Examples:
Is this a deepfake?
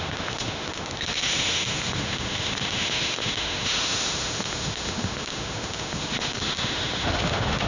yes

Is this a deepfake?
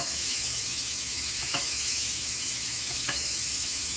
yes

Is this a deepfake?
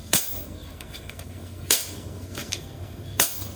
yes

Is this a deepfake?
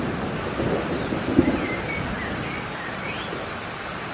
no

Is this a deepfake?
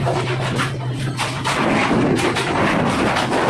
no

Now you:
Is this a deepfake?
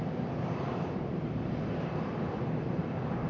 no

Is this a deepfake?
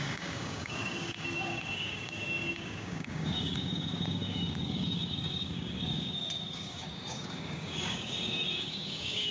yes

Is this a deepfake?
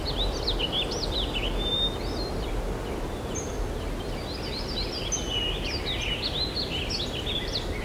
no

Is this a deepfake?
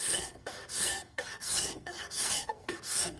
yes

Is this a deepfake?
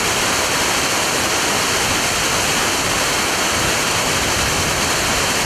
no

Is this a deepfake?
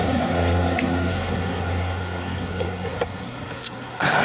yes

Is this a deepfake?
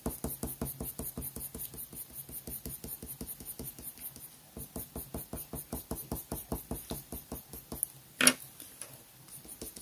no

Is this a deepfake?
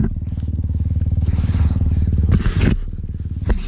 no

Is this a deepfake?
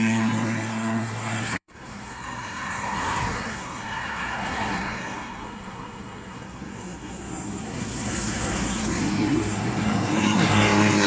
yes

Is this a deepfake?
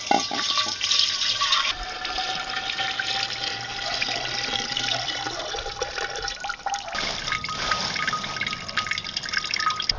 yes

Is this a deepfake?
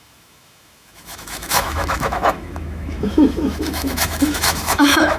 yes